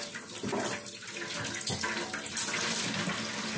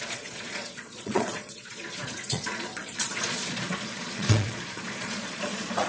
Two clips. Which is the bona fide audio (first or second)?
first